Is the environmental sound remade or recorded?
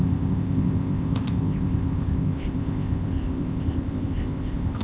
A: remade